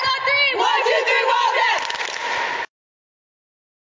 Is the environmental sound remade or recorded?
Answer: recorded